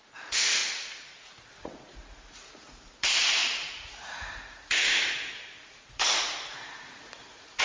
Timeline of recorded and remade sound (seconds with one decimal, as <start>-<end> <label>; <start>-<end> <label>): 0.0-7.6 remade